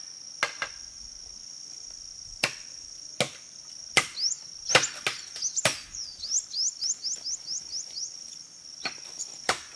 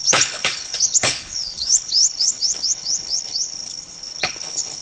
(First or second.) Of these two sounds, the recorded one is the first